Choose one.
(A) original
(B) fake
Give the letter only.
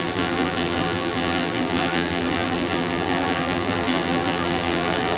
B